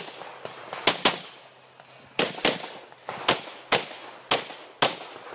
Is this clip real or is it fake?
real